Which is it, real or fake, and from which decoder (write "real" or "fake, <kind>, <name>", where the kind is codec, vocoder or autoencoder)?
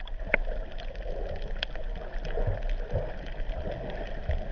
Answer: real